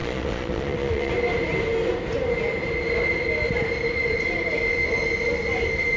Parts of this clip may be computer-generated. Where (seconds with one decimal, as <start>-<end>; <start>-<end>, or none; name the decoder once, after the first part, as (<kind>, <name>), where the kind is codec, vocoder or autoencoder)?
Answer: 0.0-1.1 (vocoder, Vocos)